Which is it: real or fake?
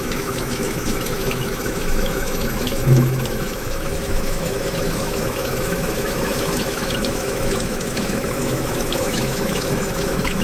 fake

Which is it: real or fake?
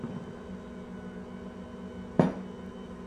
real